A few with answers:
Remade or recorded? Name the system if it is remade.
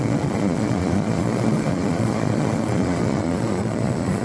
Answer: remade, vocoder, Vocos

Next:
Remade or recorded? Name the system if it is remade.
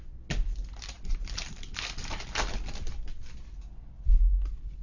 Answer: recorded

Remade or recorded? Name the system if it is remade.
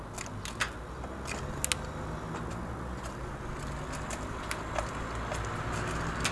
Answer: recorded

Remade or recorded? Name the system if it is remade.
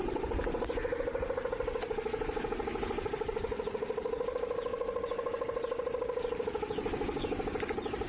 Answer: recorded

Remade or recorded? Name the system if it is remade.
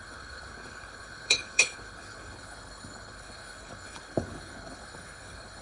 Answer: remade, codec, HILCodec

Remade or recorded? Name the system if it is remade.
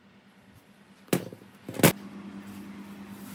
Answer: recorded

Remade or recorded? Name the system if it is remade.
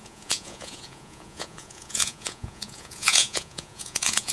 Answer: remade, vocoder, Vocos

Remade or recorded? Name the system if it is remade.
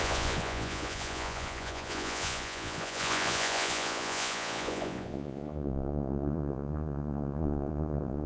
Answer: remade, vocoder, Vocos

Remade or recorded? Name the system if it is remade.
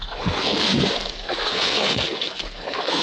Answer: remade, codec, SNAC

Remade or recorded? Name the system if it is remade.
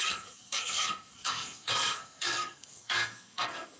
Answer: remade, codec, SNAC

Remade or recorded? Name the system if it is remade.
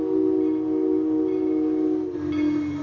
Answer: recorded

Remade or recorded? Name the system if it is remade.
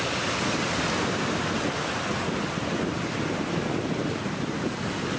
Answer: recorded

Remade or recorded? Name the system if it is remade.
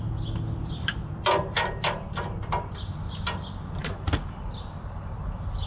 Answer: recorded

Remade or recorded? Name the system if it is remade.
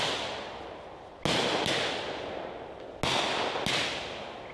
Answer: recorded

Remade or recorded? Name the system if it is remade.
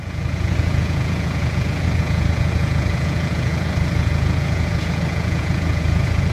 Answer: remade, vocoder, Vocos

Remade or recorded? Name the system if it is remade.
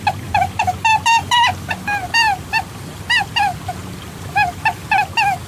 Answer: recorded